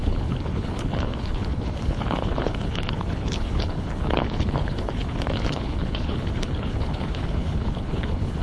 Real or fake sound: fake